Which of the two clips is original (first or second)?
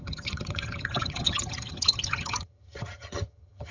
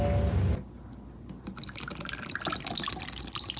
second